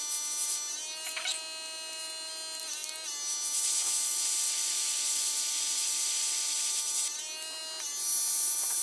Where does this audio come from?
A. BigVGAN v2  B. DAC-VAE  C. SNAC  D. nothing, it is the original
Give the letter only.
D